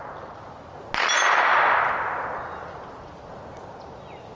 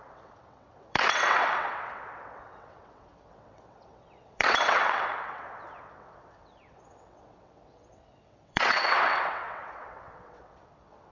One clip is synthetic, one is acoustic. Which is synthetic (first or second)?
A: second